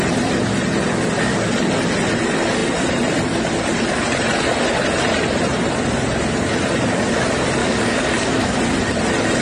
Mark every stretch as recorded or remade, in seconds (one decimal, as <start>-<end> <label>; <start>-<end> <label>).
0.0-7.6 recorded; 7.6-8.6 remade; 8.6-9.4 recorded